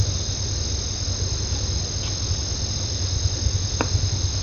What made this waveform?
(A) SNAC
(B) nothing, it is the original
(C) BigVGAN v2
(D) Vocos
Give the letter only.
B